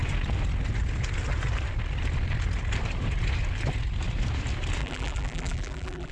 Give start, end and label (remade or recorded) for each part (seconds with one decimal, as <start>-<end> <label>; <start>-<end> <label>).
0.0-4.8 recorded; 4.8-6.1 remade